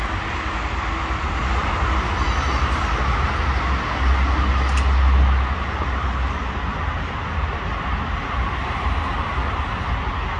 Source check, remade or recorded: recorded